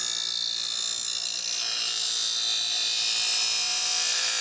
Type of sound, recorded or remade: recorded